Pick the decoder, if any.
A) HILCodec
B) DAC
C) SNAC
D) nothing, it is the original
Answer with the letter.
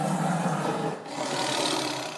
D